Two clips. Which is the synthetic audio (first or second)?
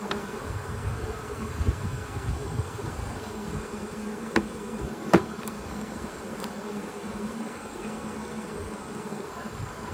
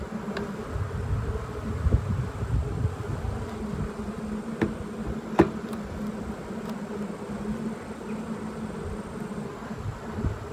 first